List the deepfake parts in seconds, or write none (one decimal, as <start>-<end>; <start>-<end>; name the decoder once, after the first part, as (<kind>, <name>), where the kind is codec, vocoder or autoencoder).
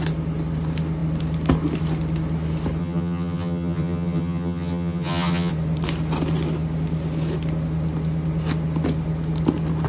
2.8-5.5 (vocoder, HiFi-GAN)